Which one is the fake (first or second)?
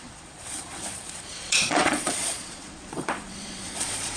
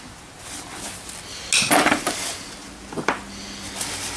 first